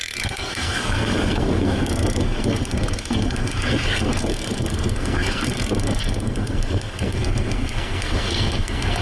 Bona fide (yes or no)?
no